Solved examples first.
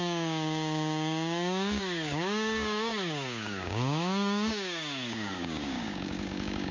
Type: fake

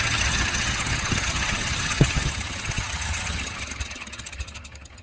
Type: fake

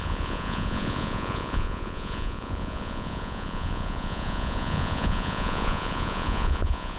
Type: fake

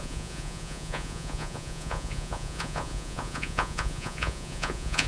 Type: fake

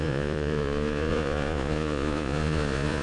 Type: fake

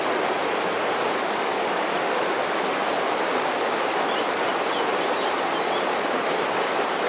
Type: real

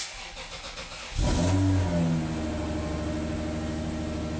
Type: real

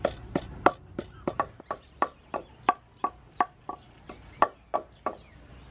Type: real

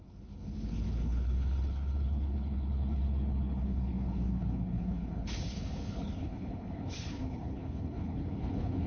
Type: fake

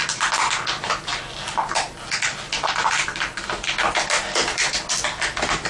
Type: fake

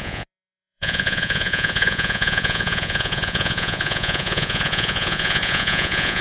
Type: fake